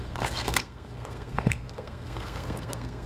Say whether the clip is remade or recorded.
remade